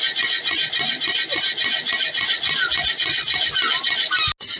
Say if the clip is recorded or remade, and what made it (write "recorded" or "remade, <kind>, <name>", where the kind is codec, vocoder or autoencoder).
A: recorded